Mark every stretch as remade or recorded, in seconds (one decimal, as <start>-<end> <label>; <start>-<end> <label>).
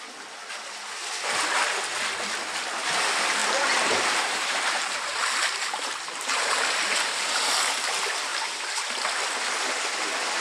0.0-3.4 recorded; 3.4-7.4 remade; 7.4-10.4 recorded